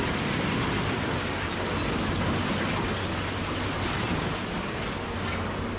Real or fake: real